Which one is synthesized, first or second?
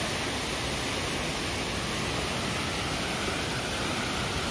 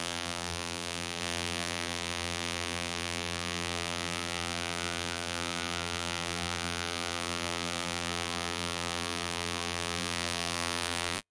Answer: second